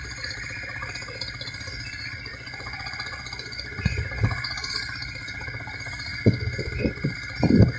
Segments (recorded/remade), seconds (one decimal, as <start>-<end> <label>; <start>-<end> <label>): 0.0-2.3 recorded; 2.3-4.7 remade; 4.7-6.1 recorded; 6.1-6.9 remade; 6.9-7.8 recorded